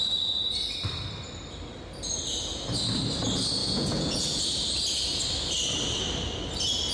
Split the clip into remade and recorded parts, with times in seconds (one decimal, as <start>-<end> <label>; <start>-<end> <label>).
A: 0.0-3.6 recorded; 3.6-4.4 remade; 4.4-6.9 recorded